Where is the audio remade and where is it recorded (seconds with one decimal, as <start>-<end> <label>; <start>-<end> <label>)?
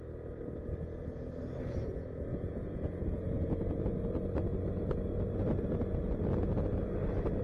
0.0-2.3 recorded; 2.3-3.5 remade; 3.5-7.4 recorded